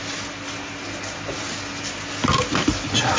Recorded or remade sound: recorded